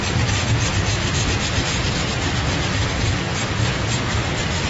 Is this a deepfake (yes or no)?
no